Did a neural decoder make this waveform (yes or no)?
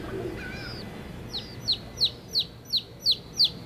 no